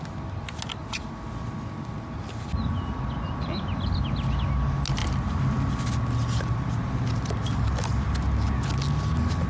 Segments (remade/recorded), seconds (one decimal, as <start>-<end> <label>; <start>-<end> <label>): 0.0-9.5 recorded